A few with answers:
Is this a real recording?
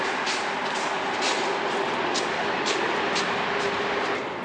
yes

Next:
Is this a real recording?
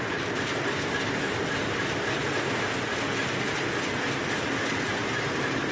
yes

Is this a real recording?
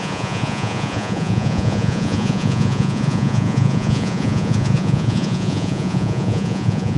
no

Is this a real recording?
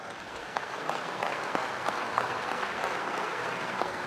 no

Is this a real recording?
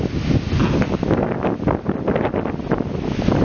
yes